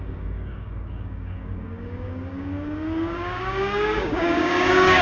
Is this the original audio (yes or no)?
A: no